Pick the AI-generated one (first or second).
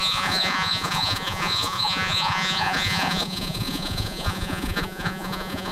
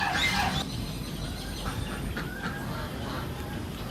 first